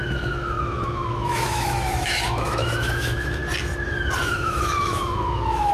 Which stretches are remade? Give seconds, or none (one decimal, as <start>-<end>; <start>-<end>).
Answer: 0.0-3.4; 4.2-5.7